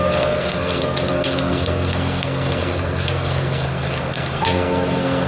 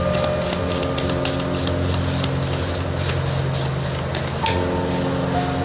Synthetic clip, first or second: first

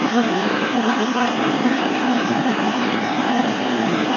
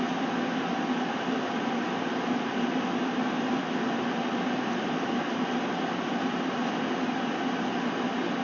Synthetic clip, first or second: first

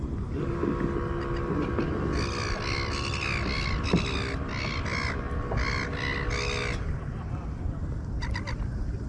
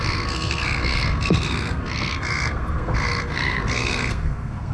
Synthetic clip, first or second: second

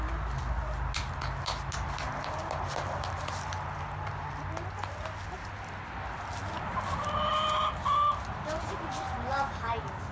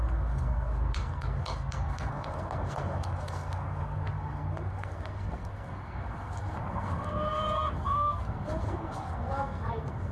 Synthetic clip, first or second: second